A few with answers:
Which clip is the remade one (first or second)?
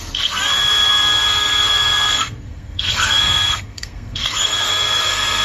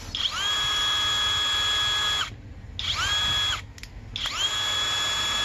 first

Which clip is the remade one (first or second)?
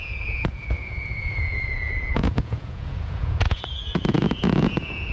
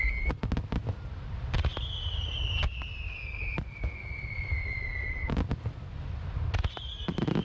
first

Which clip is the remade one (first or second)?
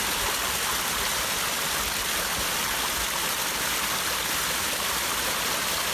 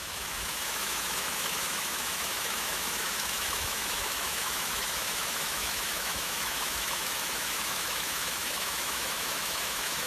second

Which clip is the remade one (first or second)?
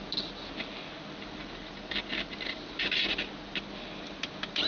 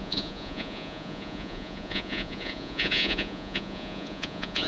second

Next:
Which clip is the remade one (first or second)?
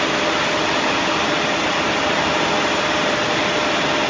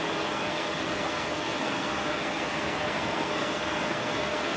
second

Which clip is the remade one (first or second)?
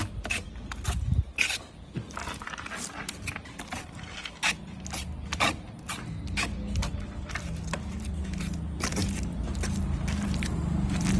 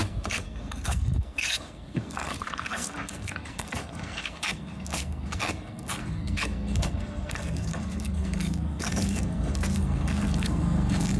second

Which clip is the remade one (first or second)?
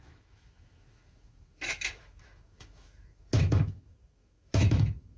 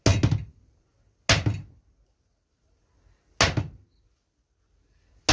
first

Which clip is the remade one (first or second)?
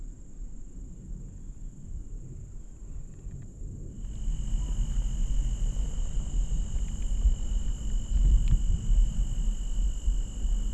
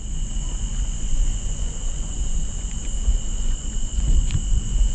second